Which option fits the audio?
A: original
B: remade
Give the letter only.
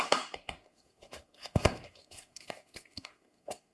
B